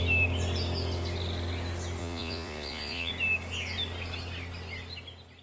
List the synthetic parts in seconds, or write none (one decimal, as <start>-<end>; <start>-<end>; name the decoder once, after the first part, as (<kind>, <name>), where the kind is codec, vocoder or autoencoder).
2.0-3.1 (vocoder, Vocos)